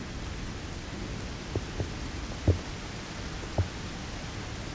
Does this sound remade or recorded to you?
recorded